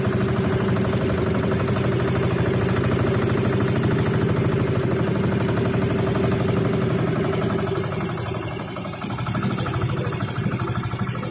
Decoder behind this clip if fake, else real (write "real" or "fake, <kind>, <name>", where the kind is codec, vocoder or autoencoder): real